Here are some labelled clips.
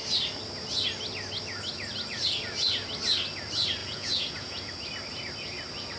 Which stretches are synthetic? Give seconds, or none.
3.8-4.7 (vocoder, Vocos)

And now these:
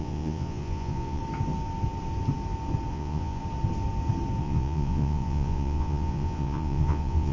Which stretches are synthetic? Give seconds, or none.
0.0-1.2 (vocoder, Vocos); 2.9-3.4; 4.4-7.3